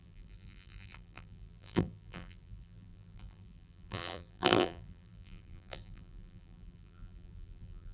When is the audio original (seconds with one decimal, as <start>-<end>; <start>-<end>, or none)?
none